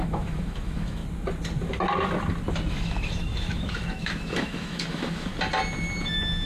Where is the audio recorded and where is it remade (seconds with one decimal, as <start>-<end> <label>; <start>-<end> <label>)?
0.0-1.0 remade; 1.0-2.7 recorded; 2.7-5.3 remade; 5.3-6.5 recorded